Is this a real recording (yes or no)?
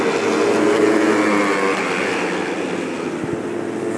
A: yes